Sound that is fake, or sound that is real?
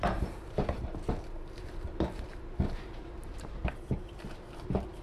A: fake